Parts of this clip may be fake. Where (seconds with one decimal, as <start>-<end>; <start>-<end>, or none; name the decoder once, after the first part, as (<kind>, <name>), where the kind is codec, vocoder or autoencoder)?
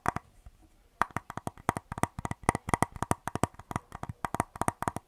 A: 0.6-1.3 (vocoder, BigVGAN v2); 3.2-5.1